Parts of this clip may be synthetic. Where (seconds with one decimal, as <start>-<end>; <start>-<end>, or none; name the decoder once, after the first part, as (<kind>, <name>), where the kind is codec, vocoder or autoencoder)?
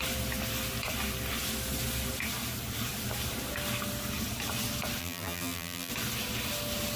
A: 5.0-5.9 (vocoder, BigVGAN v2)